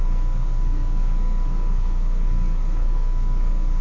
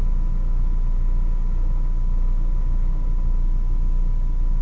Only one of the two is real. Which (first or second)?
second